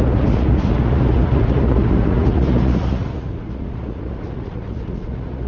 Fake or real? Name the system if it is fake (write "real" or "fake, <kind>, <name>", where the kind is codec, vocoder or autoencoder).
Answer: fake, vocoder, Vocos